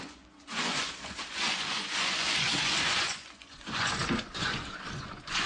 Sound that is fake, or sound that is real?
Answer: fake